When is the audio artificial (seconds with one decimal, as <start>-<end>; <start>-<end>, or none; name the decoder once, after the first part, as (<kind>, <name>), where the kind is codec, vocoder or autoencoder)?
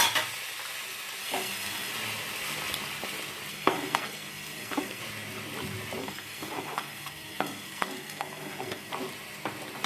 1.2-1.9 (codec, SNAC); 3.5-5.0; 6.0-8.9